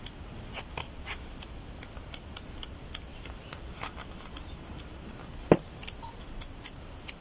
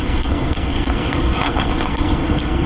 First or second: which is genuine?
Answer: first